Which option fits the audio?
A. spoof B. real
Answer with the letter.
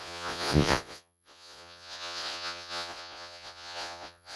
A